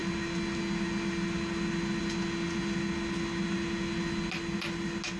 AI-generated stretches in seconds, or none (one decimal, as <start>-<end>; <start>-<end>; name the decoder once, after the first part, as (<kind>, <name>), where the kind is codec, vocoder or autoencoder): none